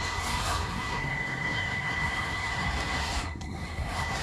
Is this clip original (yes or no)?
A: no